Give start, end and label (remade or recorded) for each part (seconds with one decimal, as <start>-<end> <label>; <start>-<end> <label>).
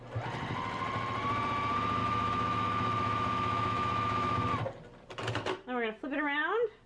0.0-2.0 recorded; 2.0-4.5 remade; 4.5-6.9 recorded